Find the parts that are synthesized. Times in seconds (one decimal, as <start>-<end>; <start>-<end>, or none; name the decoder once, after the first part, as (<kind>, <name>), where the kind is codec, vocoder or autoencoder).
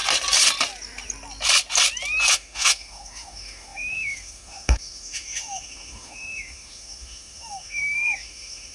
2.3-8.7 (autoencoder, DAC-VAE)